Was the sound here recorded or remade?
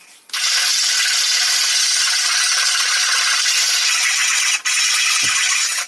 recorded